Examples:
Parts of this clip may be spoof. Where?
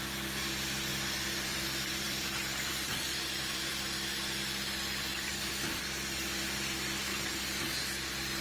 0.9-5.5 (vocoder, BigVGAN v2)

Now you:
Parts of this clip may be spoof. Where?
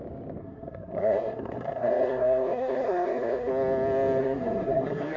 0.4-3.5 (codec, SNAC); 4.2-5.2